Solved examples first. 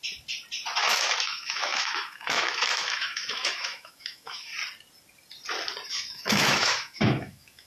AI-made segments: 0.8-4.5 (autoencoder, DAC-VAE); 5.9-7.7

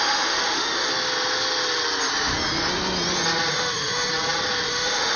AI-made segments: 0.0-0.9 (autoencoder, DAC-VAE); 3.5-4.1; 4.7-5.2